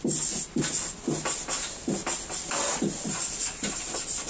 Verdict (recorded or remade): recorded